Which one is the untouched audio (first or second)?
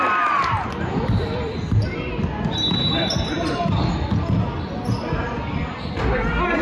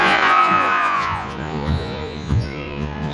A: first